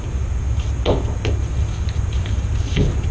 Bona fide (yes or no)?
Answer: yes